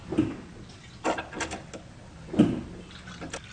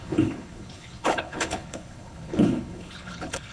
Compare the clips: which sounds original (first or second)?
first